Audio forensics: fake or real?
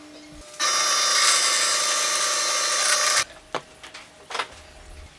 real